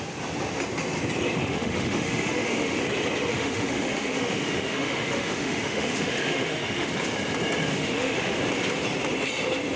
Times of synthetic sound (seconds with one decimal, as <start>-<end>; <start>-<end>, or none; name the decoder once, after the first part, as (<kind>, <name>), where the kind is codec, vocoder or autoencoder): 1.4-2.8 (autoencoder, DAC-VAE); 3.3-6.9; 7.7-8.4